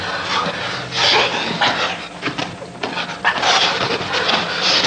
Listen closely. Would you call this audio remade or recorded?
recorded